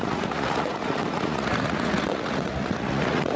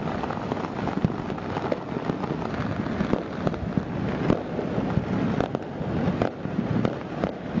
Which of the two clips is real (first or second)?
second